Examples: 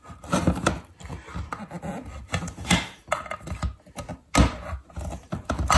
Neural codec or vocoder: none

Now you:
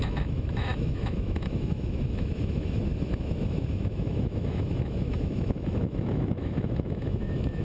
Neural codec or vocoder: autoencoder, DAC-VAE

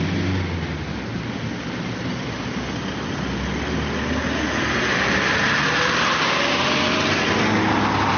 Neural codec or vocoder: none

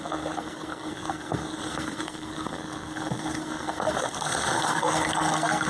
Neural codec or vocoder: codec, SNAC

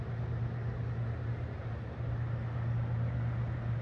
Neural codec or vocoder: none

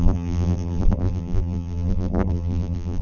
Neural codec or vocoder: vocoder, BigVGAN v2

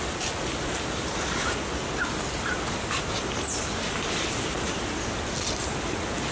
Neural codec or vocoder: none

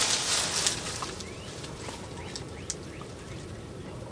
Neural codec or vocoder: none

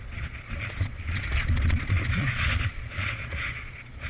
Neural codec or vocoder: vocoder, Vocos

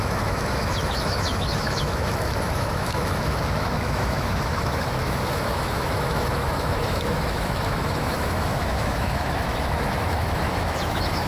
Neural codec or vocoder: autoencoder, DAC-VAE